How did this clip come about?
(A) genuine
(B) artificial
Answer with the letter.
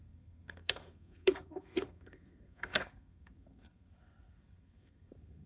B